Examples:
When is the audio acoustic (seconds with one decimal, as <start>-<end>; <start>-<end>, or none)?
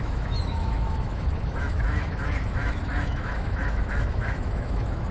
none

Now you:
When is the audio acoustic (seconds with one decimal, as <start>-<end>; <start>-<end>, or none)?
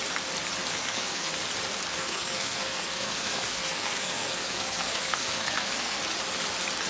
0.0-0.7; 1.3-1.9; 6.0-6.9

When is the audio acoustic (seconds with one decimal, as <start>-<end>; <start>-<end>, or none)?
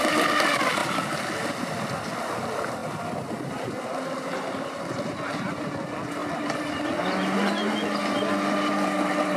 0.0-2.8; 3.5-6.2; 6.9-9.4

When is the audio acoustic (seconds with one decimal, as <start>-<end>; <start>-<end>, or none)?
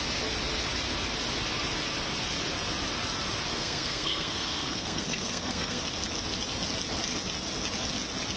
0.0-3.5; 5.8-8.4